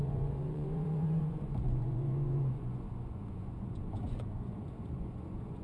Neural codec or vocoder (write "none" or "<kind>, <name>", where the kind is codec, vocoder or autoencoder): vocoder, Vocos